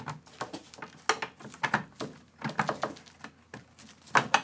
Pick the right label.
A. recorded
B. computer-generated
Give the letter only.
A